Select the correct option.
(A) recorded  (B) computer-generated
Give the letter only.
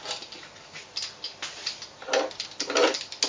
A